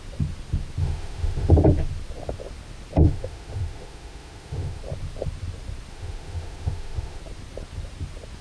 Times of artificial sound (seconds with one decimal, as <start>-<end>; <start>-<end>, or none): 0.8-1.5; 3.0-4.8; 5.9-7.2

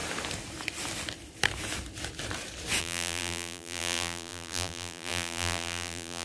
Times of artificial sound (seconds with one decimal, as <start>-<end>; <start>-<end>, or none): 2.8-6.2

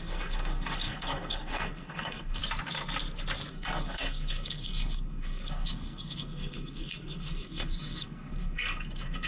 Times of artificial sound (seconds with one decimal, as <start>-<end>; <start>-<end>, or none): 0.0-2.4; 3.5-9.3

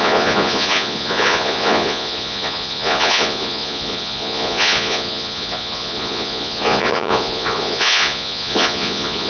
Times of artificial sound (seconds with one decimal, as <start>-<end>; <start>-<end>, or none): 0.0-9.3

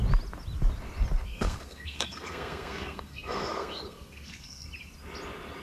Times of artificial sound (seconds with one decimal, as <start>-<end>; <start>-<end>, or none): 1.3-4.7

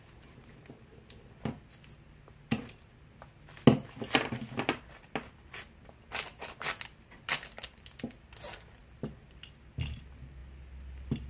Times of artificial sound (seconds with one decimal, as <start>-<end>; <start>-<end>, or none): 8.8-9.6; 10.4-11.3